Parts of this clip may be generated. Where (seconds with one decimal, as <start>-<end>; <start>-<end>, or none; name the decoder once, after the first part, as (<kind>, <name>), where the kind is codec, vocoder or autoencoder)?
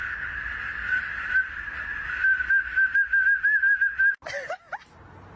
none